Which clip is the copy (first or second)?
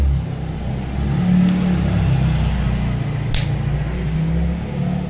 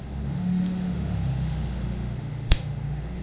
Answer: second